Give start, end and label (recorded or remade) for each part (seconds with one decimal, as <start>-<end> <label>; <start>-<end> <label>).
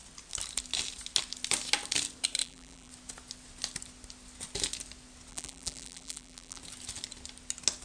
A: 0.0-2.4 recorded; 2.4-2.9 remade; 2.9-5.3 recorded; 5.3-6.6 remade; 6.6-7.8 recorded